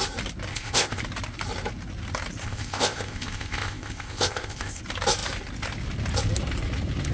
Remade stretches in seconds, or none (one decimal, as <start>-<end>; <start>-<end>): 0.5-1.0; 2.4-4.8